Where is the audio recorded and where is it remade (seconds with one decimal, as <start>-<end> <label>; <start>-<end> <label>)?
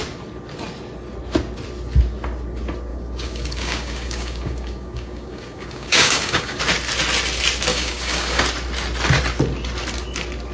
0.0-2.9 recorded; 2.9-6.6 remade; 6.6-7.7 recorded; 7.7-8.4 remade; 8.4-10.5 recorded